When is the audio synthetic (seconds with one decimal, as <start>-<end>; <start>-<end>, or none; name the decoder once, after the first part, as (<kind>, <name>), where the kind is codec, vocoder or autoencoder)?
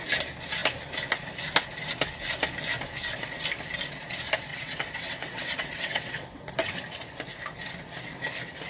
4.5-6.8 (vocoder, WaveNeXt)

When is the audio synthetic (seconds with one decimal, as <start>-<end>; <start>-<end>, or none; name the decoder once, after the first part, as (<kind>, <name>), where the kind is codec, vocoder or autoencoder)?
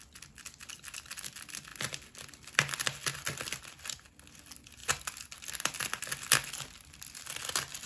none